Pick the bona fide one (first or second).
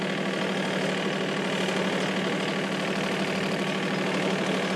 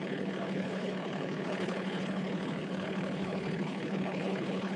first